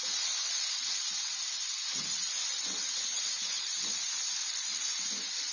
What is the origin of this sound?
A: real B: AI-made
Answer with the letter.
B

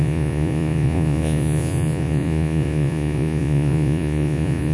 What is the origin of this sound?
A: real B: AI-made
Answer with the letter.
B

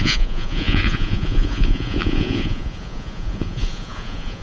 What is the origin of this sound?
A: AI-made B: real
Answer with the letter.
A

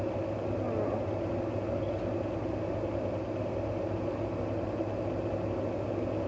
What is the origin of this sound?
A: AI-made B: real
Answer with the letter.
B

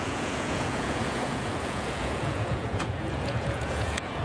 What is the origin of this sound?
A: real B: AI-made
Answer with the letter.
B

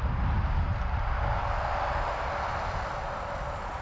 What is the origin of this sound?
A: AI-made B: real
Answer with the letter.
B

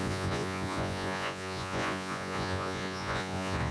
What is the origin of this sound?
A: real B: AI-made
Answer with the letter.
B